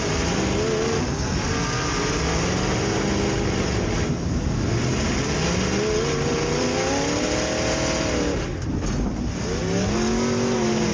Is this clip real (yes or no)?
yes